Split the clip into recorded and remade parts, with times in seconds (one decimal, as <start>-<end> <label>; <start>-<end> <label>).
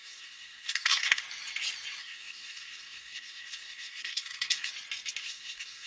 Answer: 0.0-1.2 remade; 1.2-2.0 recorded; 2.0-4.7 remade; 4.7-5.2 recorded; 5.2-5.9 remade